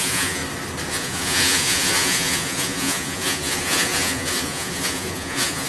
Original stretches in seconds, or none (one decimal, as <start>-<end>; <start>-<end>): 0.4-0.9